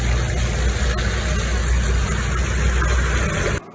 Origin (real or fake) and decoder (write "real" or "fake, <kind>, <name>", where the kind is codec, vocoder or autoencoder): real